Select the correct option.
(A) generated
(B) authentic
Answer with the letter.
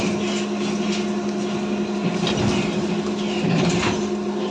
B